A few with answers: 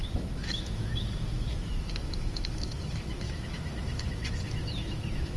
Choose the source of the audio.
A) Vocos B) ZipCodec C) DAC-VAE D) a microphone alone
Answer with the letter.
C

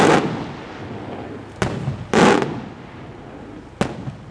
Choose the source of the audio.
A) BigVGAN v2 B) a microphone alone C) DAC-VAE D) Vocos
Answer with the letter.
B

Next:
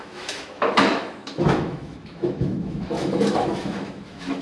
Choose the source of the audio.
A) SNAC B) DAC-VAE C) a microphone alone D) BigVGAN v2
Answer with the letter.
B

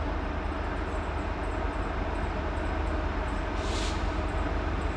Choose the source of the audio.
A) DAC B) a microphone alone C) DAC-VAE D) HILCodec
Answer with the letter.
B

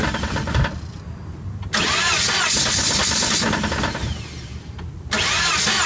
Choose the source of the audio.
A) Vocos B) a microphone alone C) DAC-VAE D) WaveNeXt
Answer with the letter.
B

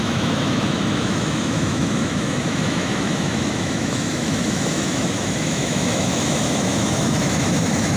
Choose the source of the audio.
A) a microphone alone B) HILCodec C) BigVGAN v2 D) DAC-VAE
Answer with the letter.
D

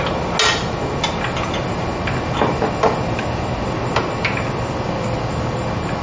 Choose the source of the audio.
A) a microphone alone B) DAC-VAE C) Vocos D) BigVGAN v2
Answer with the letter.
A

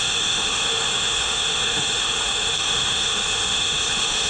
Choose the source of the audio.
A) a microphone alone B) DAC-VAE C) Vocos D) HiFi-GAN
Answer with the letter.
B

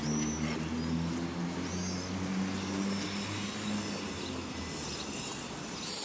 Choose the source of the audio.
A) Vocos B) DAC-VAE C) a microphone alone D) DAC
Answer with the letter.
C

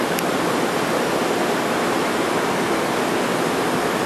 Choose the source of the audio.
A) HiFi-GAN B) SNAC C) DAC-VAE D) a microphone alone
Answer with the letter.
D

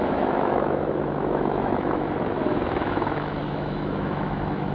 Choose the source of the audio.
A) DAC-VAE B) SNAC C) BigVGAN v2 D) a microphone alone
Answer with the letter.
A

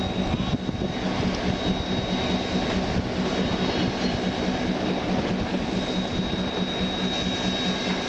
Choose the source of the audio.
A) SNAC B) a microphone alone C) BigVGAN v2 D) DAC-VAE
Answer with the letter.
B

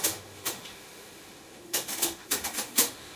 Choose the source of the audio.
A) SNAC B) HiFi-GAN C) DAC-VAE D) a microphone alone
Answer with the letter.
C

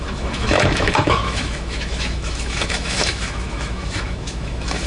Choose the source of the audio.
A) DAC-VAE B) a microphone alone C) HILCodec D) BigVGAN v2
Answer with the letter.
A